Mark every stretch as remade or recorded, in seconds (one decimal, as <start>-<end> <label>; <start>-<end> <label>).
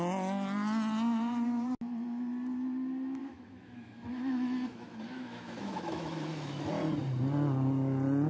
0.0-3.2 recorded; 3.2-6.7 remade; 6.7-8.3 recorded